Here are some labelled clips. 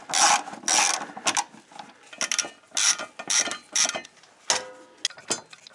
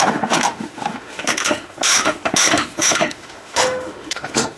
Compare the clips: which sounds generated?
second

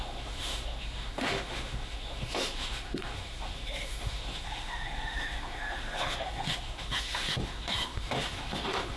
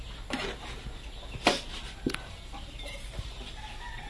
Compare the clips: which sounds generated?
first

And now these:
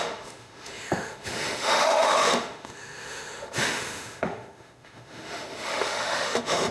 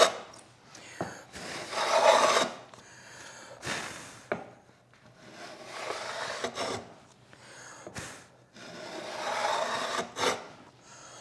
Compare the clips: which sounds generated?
first